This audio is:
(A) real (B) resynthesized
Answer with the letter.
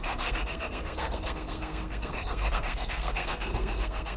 B